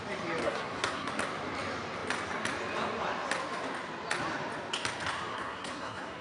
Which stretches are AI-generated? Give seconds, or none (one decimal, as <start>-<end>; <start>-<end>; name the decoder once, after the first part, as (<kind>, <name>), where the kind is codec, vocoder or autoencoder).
0.4-1.1 (codec, SNAC); 5.3-6.2